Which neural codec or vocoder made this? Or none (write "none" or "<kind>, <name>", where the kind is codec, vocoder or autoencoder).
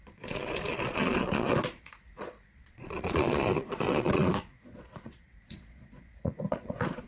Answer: vocoder, Vocos